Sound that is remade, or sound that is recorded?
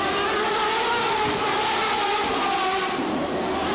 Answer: recorded